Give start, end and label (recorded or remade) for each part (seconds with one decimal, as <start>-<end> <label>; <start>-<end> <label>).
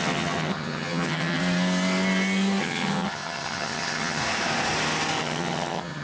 0.0-1.4 remade; 1.4-2.6 recorded; 2.6-4.2 remade; 4.2-5.2 recorded; 5.2-6.0 remade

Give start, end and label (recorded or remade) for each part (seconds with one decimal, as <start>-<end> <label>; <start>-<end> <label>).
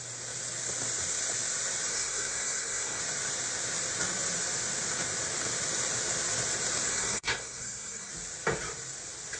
0.0-1.9 recorded; 1.9-3.0 remade; 3.0-6.9 recorded; 6.9-8.1 remade; 8.1-9.4 recorded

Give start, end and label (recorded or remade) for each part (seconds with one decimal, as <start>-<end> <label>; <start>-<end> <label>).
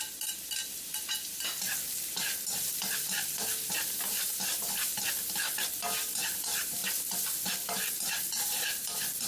0.0-9.3 recorded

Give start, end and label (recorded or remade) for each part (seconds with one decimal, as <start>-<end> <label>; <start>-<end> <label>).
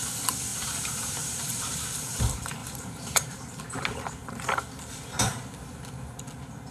0.0-0.5 recorded; 0.5-2.2 remade; 2.2-2.6 recorded; 2.6-3.4 remade; 3.4-6.7 recorded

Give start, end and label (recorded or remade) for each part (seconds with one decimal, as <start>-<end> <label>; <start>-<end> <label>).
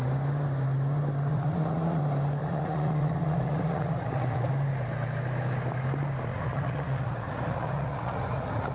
0.0-1.3 recorded; 1.3-2.0 remade; 2.0-2.4 recorded; 2.4-4.5 remade; 4.5-6.3 recorded; 6.3-8.7 remade